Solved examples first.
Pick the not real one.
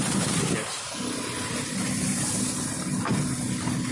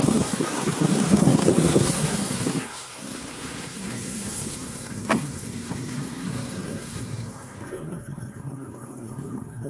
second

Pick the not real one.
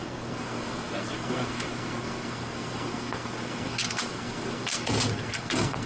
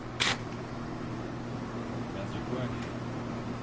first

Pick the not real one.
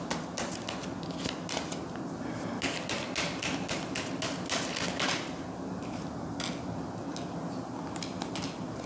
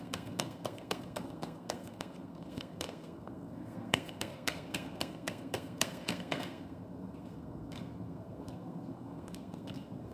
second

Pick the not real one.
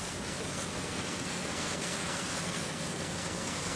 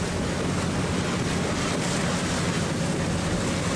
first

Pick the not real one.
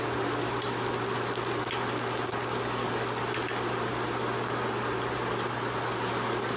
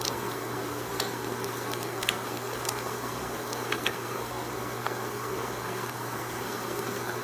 second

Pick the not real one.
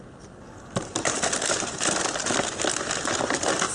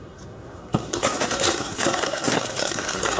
second